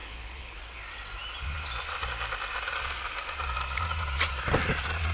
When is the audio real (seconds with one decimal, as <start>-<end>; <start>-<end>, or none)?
0.6-5.1